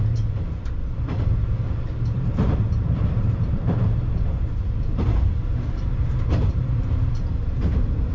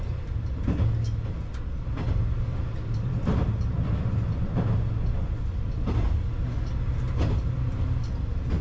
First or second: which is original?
second